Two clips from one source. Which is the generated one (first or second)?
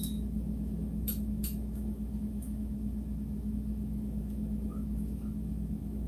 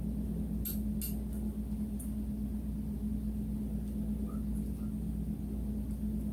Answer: first